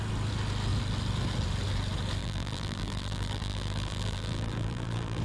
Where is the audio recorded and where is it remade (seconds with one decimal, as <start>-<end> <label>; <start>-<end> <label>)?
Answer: 0.0-2.2 recorded; 2.2-5.2 remade